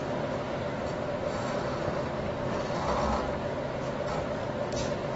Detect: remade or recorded recorded